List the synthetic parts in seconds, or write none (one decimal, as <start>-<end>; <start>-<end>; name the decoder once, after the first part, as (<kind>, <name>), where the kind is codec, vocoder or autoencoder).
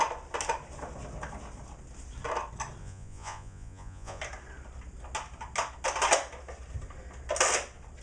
2.8-4.2 (vocoder, Vocos)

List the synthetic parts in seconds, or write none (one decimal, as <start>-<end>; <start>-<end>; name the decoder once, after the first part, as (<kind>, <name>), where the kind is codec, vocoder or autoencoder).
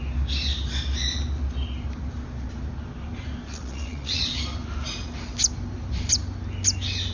3.5-4.2 (vocoder, Vocos)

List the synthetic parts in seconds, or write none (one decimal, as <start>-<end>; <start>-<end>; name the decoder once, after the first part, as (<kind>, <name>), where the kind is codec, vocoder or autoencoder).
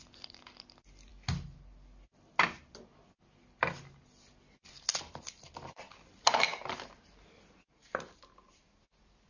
none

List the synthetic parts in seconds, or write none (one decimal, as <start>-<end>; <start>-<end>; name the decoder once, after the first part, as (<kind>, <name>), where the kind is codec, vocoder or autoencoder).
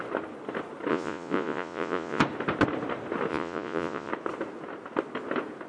0.9-2.2 (vocoder, Vocos); 3.3-4.1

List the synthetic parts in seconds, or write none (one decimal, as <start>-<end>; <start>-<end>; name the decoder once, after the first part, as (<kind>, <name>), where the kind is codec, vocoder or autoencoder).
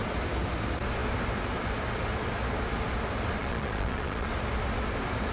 3.4-4.3 (vocoder, Vocos)